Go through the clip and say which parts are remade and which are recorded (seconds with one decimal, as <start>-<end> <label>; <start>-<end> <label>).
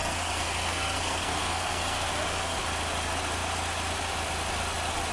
0.0-2.6 remade; 2.6-5.1 recorded